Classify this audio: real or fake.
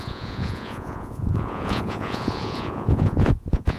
fake